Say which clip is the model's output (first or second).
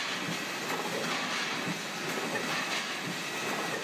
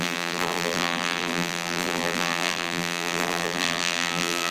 second